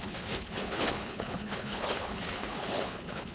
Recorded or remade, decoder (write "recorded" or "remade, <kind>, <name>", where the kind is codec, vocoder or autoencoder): remade, codec, HILCodec